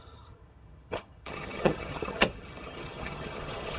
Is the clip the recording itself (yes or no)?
no